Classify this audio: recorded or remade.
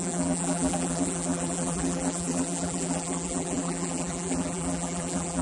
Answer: remade